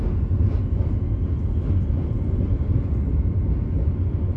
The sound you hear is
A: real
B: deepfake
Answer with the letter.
A